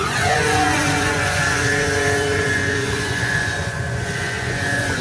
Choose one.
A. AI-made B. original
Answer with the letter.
A